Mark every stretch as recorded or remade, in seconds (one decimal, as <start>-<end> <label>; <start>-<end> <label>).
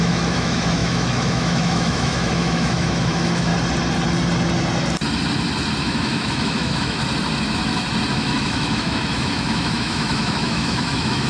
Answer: 0.0-3.5 remade; 3.5-5.8 recorded; 5.8-7.0 remade; 7.0-8.1 recorded; 8.1-11.3 remade